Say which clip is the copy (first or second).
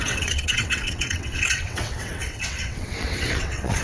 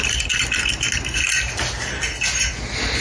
first